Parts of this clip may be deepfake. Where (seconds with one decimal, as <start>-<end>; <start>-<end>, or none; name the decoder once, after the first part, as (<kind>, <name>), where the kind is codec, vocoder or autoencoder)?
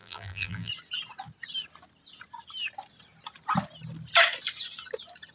0.0-0.7 (vocoder, BigVGAN v2)